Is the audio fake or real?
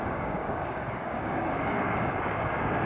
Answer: fake